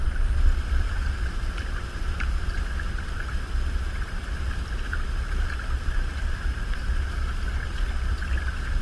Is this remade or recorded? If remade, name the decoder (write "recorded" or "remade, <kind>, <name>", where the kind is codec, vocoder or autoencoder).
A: recorded